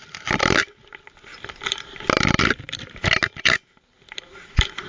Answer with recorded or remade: recorded